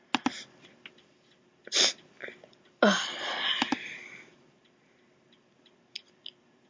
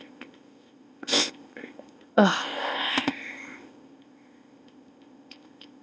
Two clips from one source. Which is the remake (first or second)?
second